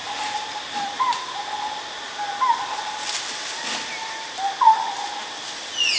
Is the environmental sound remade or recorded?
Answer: recorded